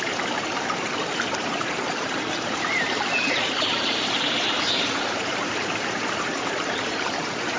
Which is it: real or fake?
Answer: fake